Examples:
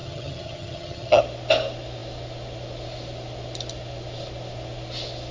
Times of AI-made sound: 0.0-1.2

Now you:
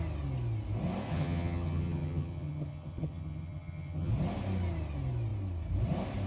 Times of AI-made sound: 1.1-4.1

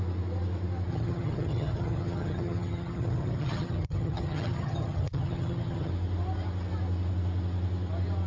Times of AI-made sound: 0.9-5.9

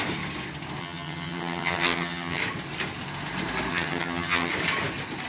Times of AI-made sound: 0.8-2.4; 3.7-4.5

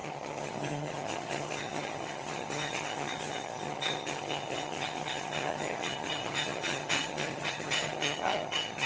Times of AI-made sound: 0.0-8.9

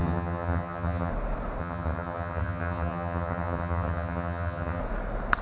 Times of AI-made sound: 0.0-1.1; 1.6-4.8

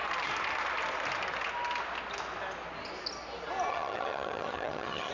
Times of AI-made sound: 3.7-5.1

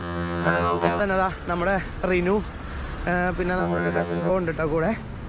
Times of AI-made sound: 0.0-1.0; 3.6-4.3